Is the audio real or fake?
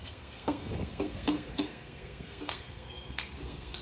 fake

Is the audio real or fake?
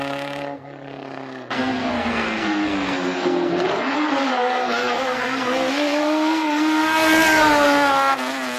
fake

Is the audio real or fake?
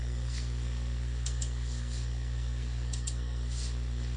fake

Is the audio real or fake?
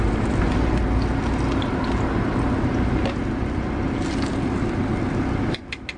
real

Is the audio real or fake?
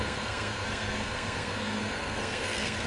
fake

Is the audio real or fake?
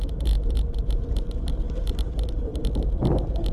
real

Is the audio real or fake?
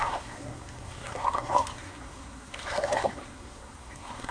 fake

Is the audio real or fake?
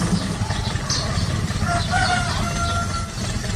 real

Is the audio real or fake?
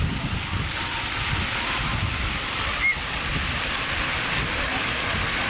real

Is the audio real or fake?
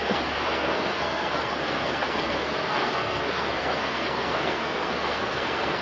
fake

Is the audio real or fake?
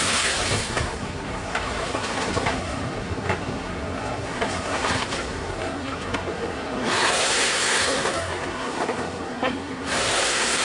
fake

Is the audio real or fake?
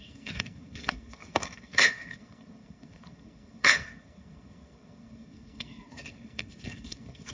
fake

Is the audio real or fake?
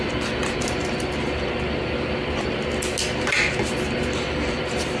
real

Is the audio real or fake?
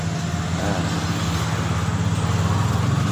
real